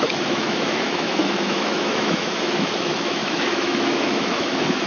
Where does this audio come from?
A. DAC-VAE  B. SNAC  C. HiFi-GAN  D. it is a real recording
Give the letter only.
A